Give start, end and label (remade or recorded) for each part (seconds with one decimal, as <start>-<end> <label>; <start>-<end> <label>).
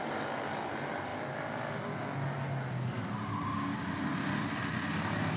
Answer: 0.0-5.4 recorded